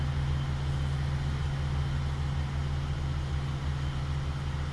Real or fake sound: real